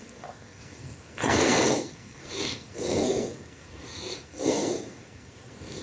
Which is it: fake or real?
fake